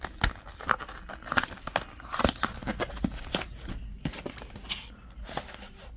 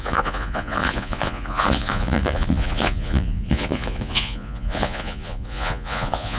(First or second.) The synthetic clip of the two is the second